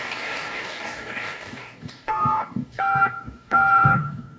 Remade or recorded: remade